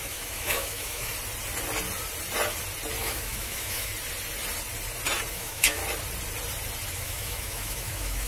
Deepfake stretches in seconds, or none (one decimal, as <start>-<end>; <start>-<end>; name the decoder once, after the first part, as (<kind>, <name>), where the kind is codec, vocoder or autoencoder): 0.0-1.1 (autoencoder, DAC-VAE); 3.0-3.9; 5.3-5.8; 6.9-8.3